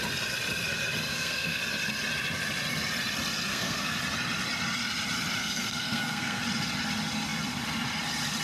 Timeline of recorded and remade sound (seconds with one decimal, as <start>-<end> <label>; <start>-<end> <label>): 0.0-1.1 recorded; 1.1-1.6 remade; 1.6-3.5 recorded; 3.5-4.0 remade; 4.0-5.4 recorded; 5.4-6.4 remade; 6.4-8.4 recorded